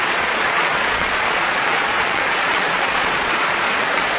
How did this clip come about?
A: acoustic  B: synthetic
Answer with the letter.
B